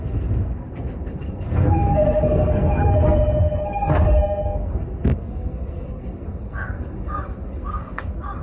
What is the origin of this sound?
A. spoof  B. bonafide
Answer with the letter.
A